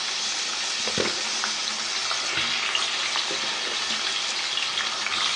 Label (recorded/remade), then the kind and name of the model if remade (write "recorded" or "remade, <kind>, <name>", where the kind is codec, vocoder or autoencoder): recorded